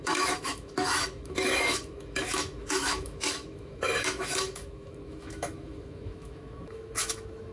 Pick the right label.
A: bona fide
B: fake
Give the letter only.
B